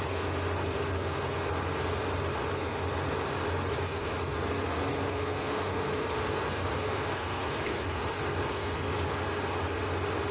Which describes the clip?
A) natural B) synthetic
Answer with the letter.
A